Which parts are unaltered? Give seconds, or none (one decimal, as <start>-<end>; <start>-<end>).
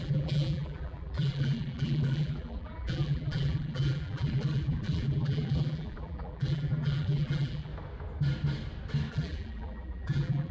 7.7-9.1